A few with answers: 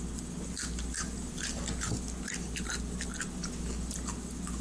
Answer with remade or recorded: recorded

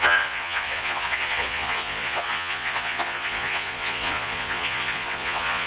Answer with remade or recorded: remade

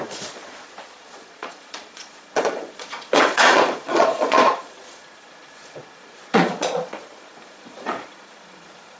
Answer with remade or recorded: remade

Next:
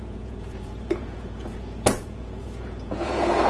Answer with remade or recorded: remade